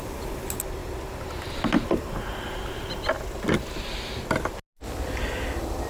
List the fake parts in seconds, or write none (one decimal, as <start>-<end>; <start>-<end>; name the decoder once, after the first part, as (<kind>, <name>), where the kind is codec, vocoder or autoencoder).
none